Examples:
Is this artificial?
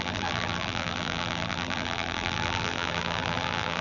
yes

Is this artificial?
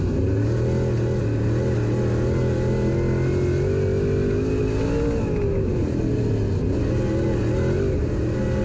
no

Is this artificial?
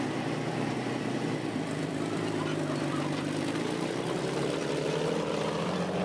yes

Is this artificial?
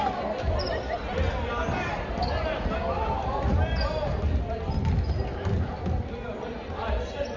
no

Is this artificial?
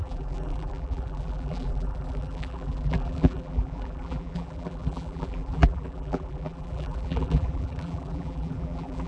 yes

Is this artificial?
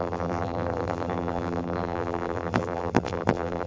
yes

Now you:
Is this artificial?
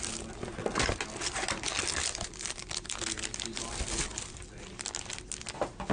no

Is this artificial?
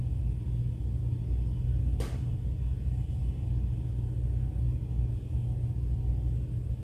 no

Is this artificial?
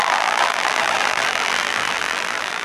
yes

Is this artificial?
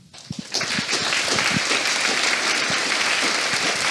no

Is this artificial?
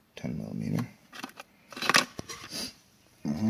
yes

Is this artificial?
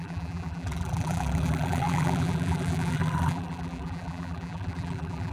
yes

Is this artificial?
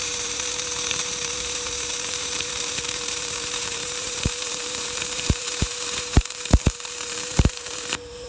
yes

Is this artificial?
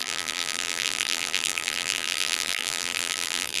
yes